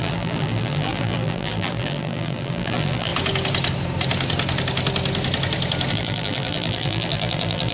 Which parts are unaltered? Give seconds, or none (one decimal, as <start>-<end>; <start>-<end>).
3.1-5.9